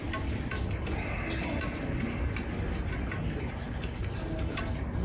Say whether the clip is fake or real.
real